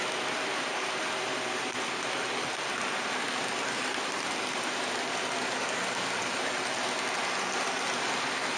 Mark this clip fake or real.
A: real